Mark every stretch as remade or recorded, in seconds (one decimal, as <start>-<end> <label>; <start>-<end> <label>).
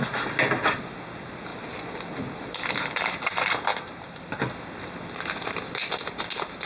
0.0-6.7 recorded